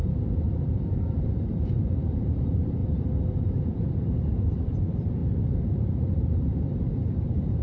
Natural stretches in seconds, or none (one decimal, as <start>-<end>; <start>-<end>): 2.8-3.4